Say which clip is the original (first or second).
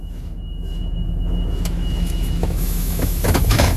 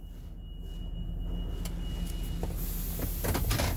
second